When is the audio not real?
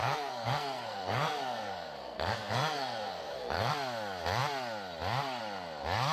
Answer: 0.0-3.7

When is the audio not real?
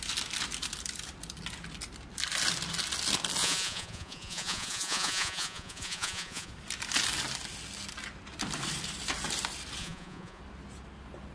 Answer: 3.4-6.5; 9.8-10.4